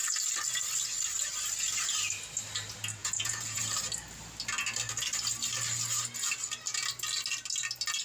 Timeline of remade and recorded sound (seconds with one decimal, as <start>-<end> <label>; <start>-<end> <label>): 0.0-3.0 recorded; 3.0-3.6 remade; 3.6-8.0 recorded